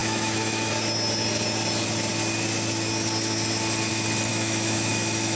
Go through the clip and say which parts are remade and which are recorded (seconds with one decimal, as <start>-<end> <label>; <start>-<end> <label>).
0.0-0.7 remade; 0.7-4.3 recorded; 4.3-5.4 remade